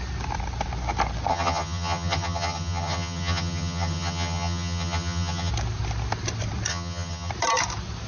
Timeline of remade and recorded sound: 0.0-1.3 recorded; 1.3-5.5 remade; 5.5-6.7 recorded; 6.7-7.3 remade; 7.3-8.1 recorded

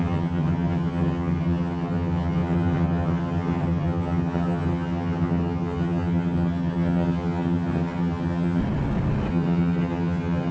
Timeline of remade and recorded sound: 0.0-8.6 remade; 8.6-9.3 recorded; 9.3-10.5 remade

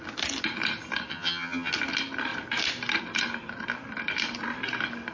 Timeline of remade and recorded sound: 0.0-1.1 recorded; 1.1-1.7 remade; 1.7-5.1 recorded

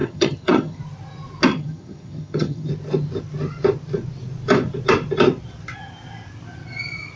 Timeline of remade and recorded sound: 0.0-0.8 remade; 0.8-1.5 recorded; 1.5-2.7 remade; 2.7-7.2 recorded

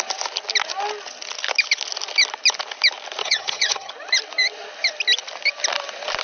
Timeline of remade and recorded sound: 0.0-3.2 recorded; 3.2-3.9 remade; 3.9-6.2 recorded

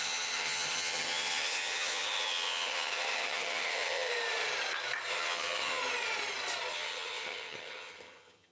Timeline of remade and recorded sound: 0.0-4.1 remade; 4.1-5.1 recorded; 5.1-5.8 remade; 5.8-6.7 recorded; 6.7-8.5 remade

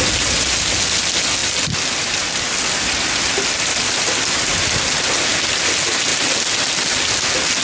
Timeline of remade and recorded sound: 0.0-7.6 recorded